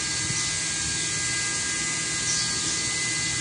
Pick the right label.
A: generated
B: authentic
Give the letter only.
B